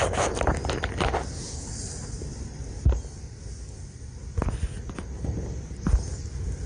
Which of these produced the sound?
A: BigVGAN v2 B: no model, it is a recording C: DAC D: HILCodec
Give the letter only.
B